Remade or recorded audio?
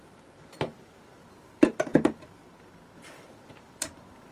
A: remade